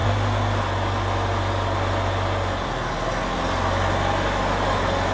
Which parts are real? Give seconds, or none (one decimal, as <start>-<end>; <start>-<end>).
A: 0.0-5.1